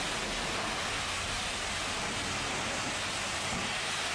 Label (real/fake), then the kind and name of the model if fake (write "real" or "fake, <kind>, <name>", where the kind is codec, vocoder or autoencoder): real